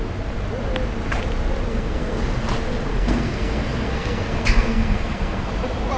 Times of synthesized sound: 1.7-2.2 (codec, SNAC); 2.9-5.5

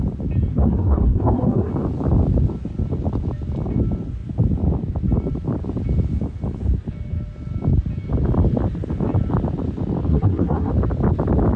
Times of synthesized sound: 0.5-1.7 (codec, SNAC); 10.1-10.7

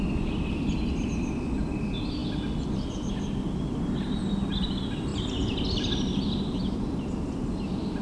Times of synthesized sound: none

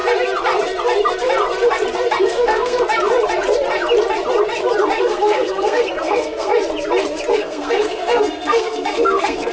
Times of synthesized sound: 2.2-2.8 (codec, SNAC); 5.0-6.5; 7.3-9.5

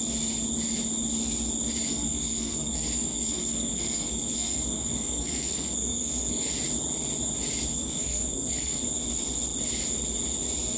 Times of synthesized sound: 1.9-6.5 (codec, SNAC); 7.7-8.8

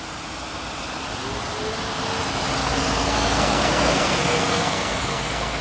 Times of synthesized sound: 2.6-5.6 (codec, SNAC)

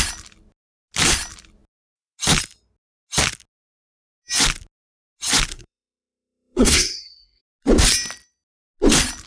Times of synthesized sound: 5.5-7.4 (codec, SNAC)

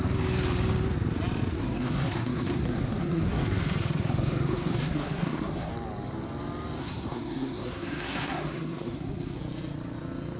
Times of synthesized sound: 1.5-5.7 (codec, SNAC); 6.8-9.4